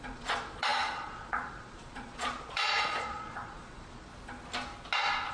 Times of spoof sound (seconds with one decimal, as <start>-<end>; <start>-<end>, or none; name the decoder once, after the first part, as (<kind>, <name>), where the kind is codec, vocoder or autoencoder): 0.0-4.1 (vocoder, Vocos)